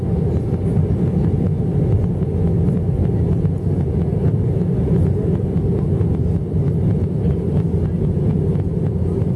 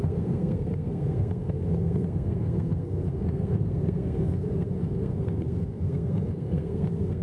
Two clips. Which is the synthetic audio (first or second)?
second